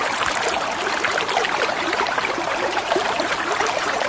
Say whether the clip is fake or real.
fake